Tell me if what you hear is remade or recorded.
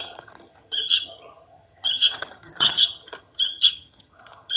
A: remade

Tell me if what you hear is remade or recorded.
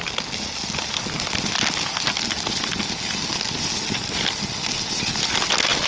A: recorded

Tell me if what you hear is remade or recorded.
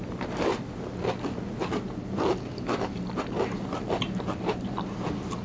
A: recorded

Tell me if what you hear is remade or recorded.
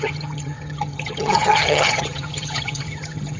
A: remade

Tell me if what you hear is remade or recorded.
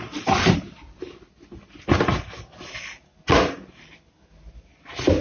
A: recorded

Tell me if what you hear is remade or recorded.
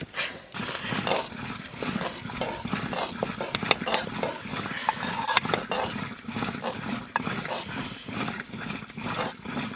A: recorded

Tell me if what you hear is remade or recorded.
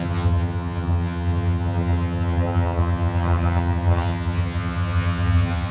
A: remade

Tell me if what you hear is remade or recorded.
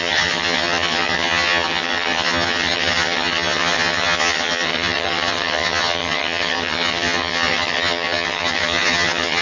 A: remade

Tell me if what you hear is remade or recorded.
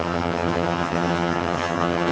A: remade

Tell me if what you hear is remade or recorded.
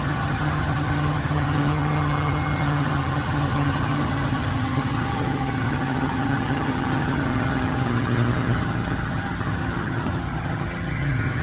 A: remade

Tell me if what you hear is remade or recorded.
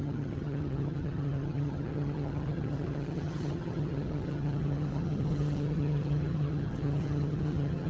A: remade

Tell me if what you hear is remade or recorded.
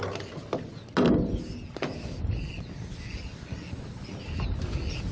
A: recorded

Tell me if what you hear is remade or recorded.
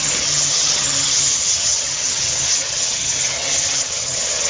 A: remade